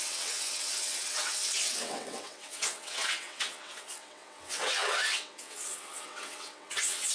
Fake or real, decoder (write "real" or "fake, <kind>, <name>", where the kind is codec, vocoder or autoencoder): fake, vocoder, WaveNeXt